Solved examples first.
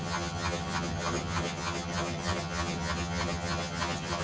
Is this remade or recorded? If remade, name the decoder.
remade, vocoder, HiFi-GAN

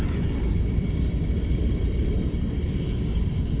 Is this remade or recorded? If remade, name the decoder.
recorded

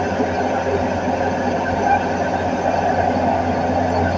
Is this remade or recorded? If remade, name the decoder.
recorded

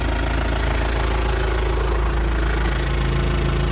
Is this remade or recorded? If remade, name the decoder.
recorded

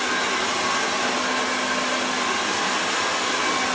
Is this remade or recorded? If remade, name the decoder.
recorded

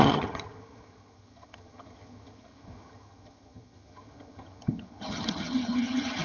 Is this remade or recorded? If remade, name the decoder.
remade, vocoder, HiFi-GAN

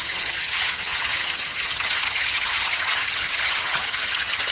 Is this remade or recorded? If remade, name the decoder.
remade, vocoder, HiFi-GAN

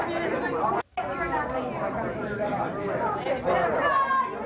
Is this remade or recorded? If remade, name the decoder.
recorded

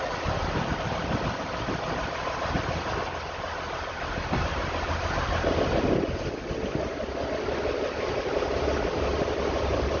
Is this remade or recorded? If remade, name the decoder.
recorded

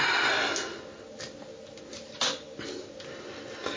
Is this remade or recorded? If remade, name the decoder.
recorded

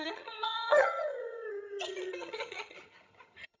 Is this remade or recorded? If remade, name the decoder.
remade, vocoder, HiFi-GAN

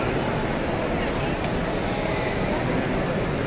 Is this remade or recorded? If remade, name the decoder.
recorded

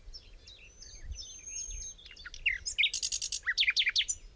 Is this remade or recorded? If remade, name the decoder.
recorded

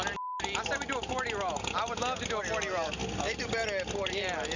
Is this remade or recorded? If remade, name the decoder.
recorded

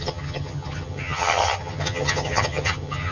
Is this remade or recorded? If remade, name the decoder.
remade, vocoder, HiFi-GAN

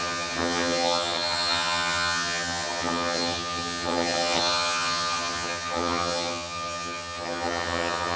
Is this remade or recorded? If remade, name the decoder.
remade, vocoder, HiFi-GAN